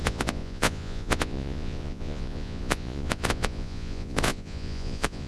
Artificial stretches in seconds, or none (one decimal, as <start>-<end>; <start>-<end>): 0.0-5.3